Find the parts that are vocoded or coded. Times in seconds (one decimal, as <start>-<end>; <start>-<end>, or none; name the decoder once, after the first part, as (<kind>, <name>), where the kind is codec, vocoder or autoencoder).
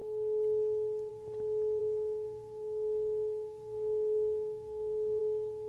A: 1.8-5.2 (codec, SNAC)